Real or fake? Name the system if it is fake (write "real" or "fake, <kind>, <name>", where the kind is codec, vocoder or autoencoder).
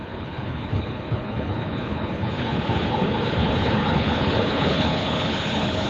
fake, codec, HILCodec